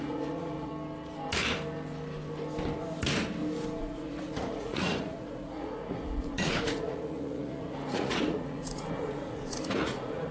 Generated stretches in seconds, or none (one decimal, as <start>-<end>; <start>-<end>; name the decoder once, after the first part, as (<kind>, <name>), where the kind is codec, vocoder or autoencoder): 0.0-0.7 (vocoder, Vocos); 3.8-10.3